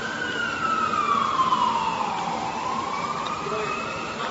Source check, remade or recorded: remade